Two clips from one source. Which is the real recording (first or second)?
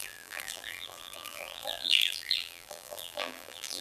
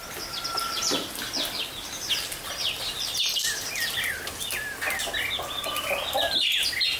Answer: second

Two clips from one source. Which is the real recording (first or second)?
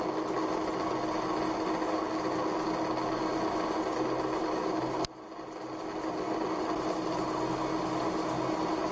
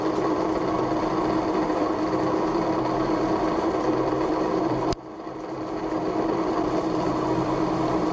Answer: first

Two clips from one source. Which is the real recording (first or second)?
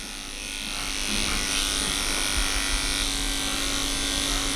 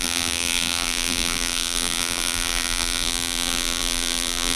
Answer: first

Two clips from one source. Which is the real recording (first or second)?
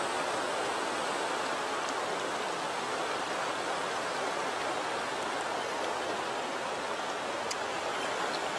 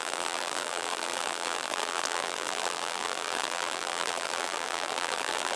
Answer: first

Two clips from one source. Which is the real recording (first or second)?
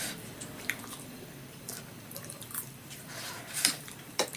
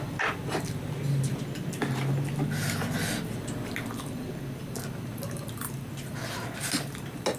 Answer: second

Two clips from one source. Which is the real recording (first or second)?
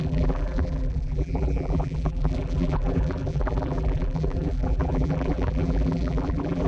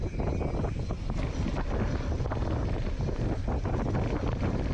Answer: second